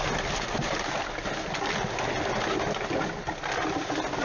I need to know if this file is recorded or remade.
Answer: recorded